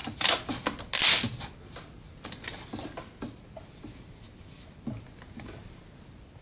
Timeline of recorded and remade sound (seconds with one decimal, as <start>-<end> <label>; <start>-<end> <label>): 0.0-6.4 recorded

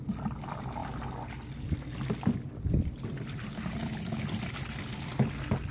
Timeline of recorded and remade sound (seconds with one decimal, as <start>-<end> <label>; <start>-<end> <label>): 0.0-5.7 recorded

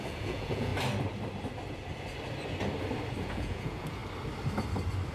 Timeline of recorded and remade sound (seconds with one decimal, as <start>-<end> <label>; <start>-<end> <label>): 0.0-0.7 remade; 0.7-3.2 recorded; 3.2-4.0 remade; 4.0-5.1 recorded

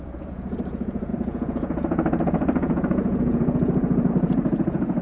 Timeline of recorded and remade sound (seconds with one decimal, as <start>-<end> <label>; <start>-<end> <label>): 0.0-5.0 remade

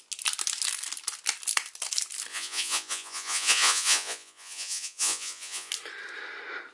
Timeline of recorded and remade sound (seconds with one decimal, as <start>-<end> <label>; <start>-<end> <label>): 0.0-2.3 recorded; 2.3-5.7 remade; 5.7-6.7 recorded

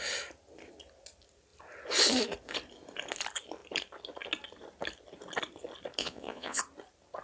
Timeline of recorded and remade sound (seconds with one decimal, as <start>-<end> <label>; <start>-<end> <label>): 0.0-6.0 recorded; 6.0-6.6 remade; 6.6-7.2 recorded

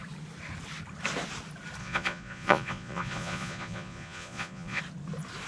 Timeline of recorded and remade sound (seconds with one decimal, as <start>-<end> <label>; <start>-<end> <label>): 0.0-1.8 recorded; 1.8-4.8 remade; 4.8-5.5 recorded

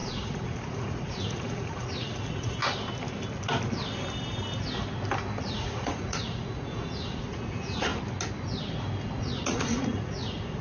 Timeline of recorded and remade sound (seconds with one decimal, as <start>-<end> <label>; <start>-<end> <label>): 0.0-2.6 remade; 2.6-5.4 recorded; 5.4-7.9 remade; 7.9-9.2 recorded; 9.2-10.6 remade